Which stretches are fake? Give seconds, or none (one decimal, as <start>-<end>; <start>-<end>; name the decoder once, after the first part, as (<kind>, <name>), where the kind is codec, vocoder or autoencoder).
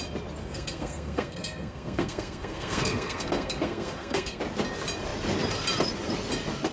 0.4-4.4 (codec, SNAC)